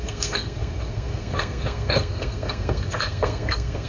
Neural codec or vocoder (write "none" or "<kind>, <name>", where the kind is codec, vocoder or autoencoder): codec, SNAC